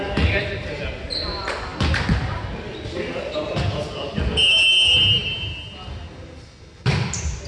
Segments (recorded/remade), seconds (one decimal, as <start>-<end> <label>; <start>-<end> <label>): 0.0-7.5 recorded